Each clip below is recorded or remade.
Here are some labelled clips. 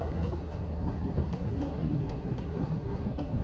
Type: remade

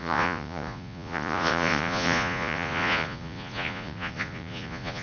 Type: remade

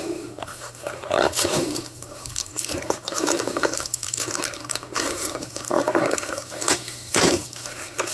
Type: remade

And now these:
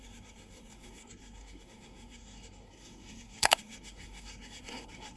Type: remade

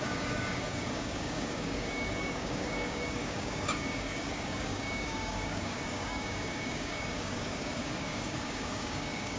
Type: remade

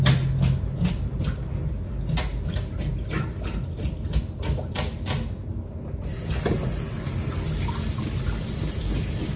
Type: recorded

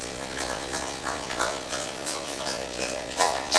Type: remade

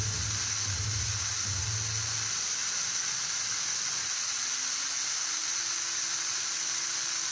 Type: recorded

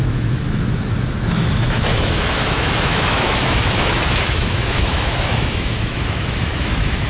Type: remade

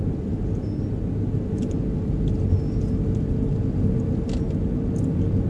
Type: recorded